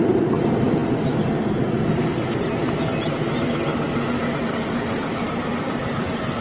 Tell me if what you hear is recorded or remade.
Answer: recorded